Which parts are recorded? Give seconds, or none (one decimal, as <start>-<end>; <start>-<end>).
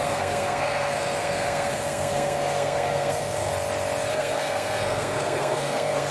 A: 3.5-4.1